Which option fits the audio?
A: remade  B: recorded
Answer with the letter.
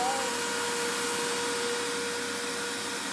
B